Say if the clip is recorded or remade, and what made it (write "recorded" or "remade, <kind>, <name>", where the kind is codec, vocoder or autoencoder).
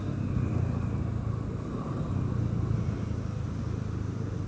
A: recorded